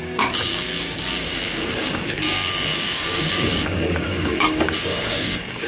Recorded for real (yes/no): no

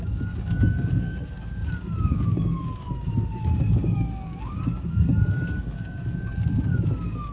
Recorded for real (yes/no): no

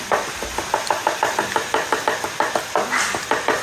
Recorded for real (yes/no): yes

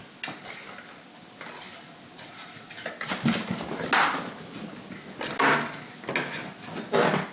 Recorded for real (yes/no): yes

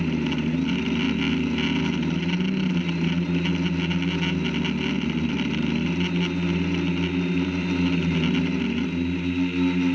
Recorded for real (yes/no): yes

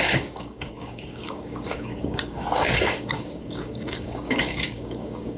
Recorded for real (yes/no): no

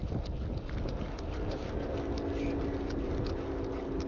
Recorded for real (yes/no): yes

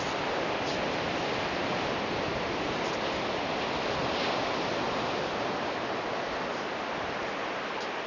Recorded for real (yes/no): yes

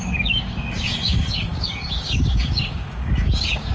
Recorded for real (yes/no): no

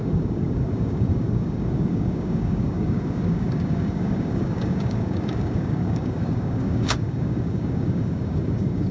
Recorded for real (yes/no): no